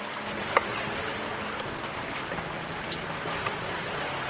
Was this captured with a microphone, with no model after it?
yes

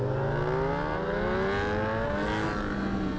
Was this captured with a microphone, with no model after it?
yes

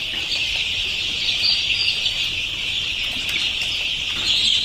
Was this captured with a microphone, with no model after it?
yes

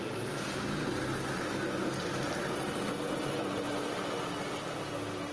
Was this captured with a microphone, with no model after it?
yes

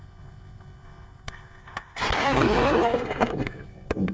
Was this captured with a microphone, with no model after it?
no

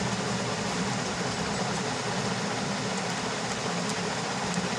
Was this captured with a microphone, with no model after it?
yes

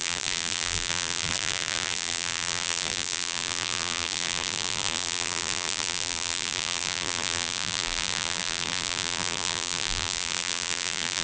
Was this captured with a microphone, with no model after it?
no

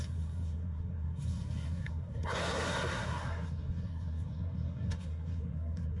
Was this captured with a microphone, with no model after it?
no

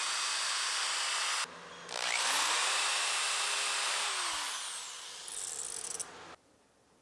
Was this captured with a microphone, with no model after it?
yes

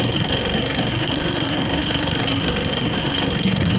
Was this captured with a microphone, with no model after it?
no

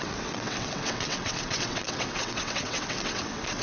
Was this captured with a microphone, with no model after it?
no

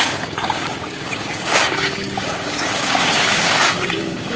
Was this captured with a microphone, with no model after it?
no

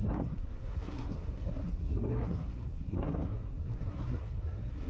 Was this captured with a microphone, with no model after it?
no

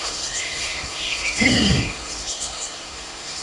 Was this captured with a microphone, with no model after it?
no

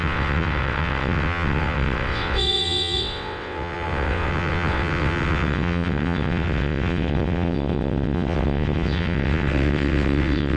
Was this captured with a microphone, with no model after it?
no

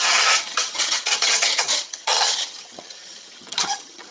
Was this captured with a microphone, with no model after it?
no